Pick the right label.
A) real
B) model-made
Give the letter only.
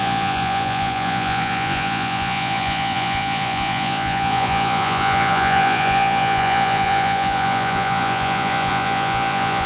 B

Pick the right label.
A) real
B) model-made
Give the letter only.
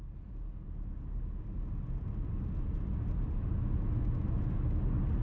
A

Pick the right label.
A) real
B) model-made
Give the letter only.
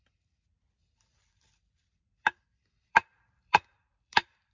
B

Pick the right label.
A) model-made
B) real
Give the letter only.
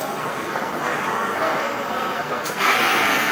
A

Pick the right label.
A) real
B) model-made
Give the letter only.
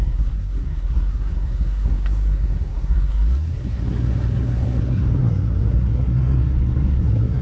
B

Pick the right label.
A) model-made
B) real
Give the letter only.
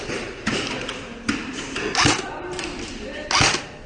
B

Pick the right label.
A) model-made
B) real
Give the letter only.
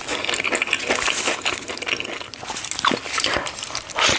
B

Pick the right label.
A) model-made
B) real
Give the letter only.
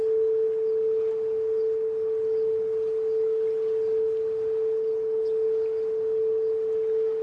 B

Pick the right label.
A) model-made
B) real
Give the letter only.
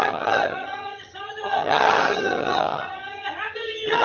A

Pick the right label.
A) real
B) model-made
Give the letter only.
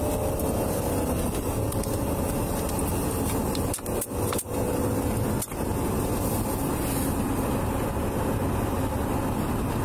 A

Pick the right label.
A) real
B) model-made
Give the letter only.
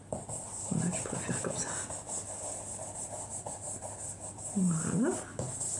A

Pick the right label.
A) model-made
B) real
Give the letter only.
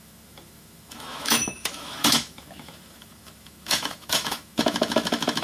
A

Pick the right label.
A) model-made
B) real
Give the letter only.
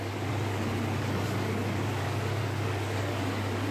A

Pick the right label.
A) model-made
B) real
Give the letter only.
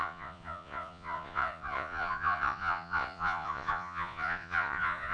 A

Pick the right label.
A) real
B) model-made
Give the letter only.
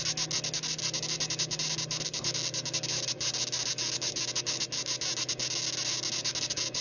A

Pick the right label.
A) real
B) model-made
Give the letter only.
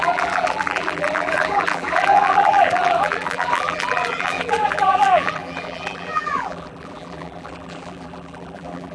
B